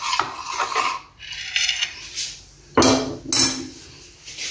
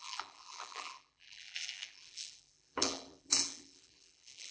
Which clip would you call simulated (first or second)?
second